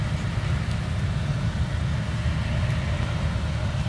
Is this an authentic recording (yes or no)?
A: yes